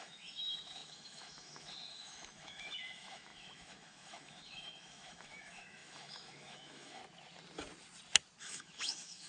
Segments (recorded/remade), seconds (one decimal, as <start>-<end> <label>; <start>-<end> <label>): 0.0-7.0 remade; 7.0-8.4 recorded; 8.4-9.3 remade